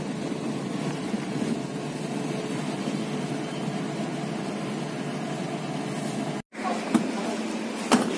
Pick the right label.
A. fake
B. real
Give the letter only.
B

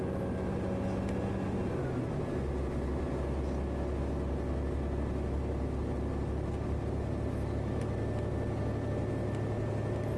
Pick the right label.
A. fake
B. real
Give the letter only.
B